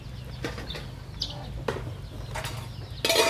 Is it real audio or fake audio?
real